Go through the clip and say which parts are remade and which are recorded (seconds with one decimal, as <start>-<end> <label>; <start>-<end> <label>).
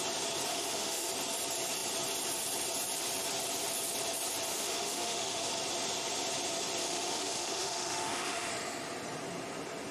0.0-0.5 recorded; 0.5-1.1 remade; 1.1-4.5 recorded; 4.5-5.5 remade; 5.5-6.8 recorded; 6.8-8.5 remade; 8.5-9.9 recorded